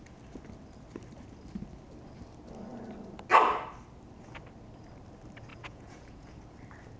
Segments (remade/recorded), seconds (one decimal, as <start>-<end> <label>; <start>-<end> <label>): 0.0-5.5 recorded; 5.5-6.4 remade; 6.4-7.0 recorded